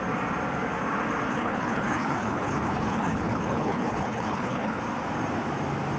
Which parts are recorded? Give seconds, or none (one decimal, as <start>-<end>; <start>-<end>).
0.0-1.3; 4.8-6.0